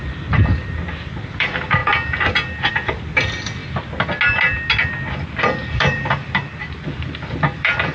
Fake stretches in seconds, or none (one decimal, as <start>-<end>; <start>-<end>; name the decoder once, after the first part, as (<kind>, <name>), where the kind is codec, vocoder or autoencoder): 0.0-1.8 (vocoder, BigVGAN v2); 2.7-3.6; 5.7-7.9